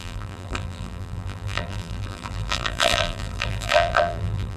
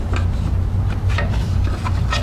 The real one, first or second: second